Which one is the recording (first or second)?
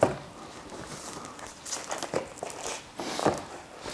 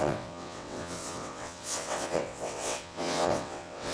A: first